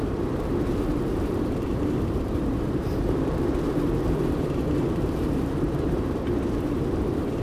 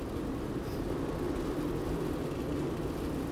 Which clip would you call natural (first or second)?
second